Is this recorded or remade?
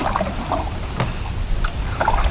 recorded